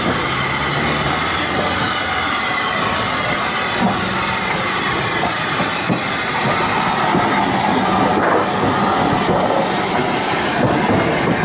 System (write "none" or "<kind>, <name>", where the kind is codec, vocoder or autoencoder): none